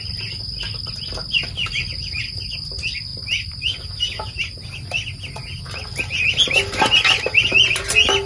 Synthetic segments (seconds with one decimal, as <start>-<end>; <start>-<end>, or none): none